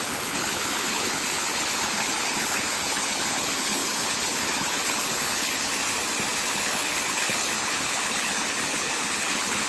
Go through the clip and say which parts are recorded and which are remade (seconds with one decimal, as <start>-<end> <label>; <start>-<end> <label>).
0.0-5.7 remade; 5.7-6.5 recorded; 6.5-9.7 remade